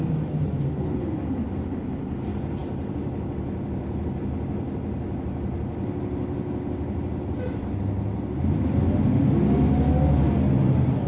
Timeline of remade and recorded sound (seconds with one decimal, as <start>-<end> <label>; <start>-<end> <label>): 0.0-11.1 recorded